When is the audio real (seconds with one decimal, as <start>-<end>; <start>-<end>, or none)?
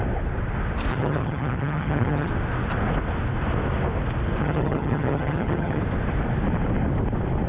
0.0-0.9; 2.3-4.4; 5.8-7.5